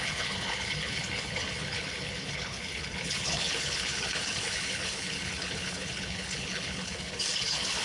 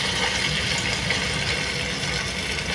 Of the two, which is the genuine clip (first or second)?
second